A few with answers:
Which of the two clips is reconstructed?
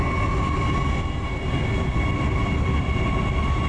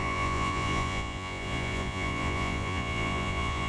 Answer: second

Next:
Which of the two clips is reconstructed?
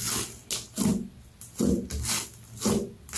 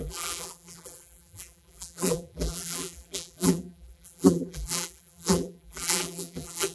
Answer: second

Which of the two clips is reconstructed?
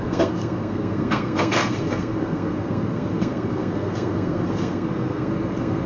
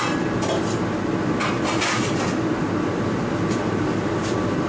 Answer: first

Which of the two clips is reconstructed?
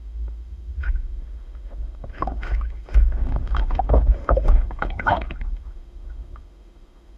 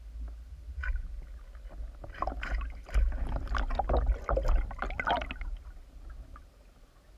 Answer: first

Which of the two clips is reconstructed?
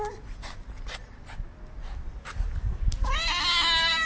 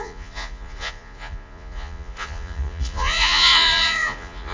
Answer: second